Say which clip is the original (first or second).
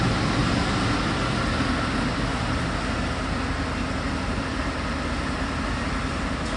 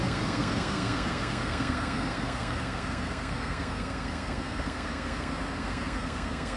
first